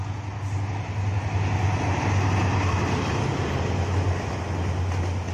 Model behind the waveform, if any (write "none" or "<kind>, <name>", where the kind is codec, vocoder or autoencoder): none